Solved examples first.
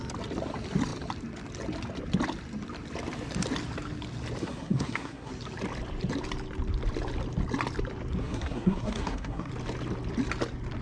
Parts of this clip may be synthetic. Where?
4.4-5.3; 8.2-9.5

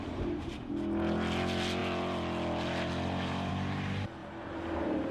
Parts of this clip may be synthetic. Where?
4.2-5.1

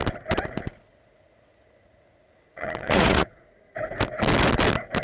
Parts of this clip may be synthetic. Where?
0.9-3.5